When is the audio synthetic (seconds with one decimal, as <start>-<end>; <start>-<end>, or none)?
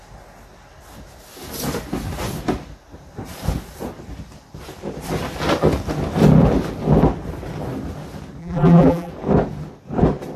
8.4-9.1